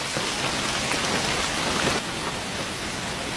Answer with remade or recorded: recorded